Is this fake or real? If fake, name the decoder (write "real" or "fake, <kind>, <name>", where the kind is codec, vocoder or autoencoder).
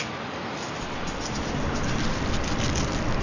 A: real